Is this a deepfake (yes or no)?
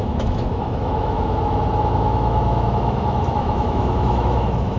yes